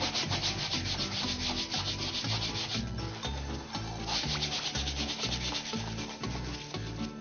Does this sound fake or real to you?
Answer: real